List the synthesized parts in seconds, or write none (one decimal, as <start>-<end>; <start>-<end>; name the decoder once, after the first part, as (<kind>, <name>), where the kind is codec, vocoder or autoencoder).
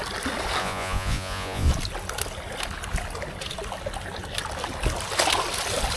0.6-1.7 (vocoder, Vocos)